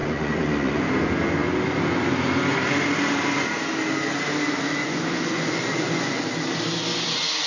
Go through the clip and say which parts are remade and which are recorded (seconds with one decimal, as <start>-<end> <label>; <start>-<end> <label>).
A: 0.0-0.8 remade; 0.8-4.8 recorded; 4.8-6.2 remade; 6.2-7.5 recorded